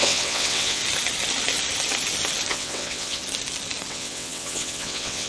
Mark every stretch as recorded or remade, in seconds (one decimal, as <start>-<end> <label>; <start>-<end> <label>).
0.0-0.8 remade; 0.8-2.5 recorded; 2.5-3.2 remade; 3.2-3.9 recorded; 3.9-5.3 remade